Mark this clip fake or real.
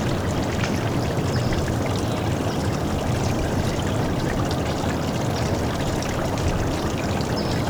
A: real